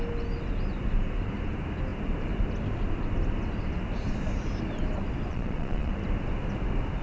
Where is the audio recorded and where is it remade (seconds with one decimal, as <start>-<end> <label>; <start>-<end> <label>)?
0.0-5.3 recorded; 5.3-5.9 remade; 5.9-7.0 recorded